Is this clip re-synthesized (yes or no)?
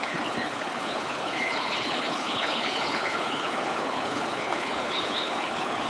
yes